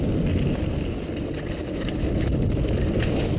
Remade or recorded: recorded